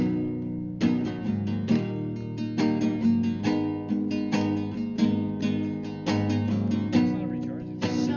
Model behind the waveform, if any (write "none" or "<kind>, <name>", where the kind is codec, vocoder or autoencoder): none